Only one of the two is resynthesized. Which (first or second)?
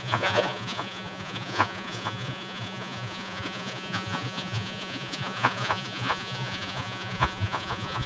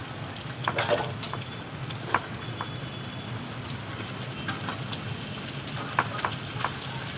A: first